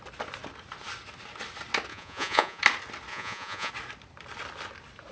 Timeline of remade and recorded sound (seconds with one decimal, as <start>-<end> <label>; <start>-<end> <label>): 0.0-1.9 recorded; 1.9-2.6 remade; 2.6-3.1 recorded; 3.1-3.7 remade; 3.7-5.1 recorded